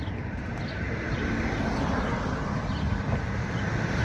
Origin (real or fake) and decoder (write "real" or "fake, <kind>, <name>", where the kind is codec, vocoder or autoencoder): real